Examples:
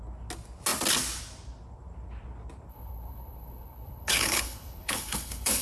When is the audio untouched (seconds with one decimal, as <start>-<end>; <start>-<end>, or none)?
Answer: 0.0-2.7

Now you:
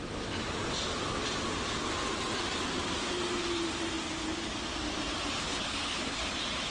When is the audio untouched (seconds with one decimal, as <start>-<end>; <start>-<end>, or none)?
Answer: 0.0-5.4; 6.2-6.7

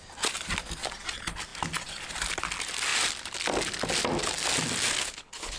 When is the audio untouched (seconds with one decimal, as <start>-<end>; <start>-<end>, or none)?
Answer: 0.0-5.0

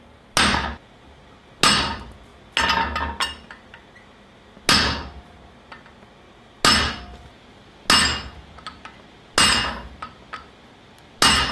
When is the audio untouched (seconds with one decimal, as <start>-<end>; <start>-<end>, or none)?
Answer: 0.0-11.5

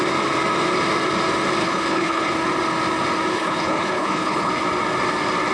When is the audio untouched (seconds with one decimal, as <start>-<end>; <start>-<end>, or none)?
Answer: 0.0-1.6; 2.3-3.3; 4.5-5.5